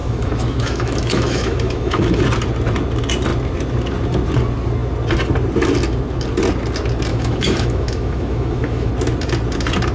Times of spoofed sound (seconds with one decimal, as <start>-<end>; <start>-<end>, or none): 0.0-2.2; 7.1-8.9